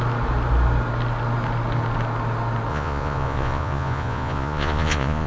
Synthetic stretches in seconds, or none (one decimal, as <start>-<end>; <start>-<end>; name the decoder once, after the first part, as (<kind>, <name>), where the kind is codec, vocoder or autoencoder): 2.7-5.3 (vocoder, Vocos)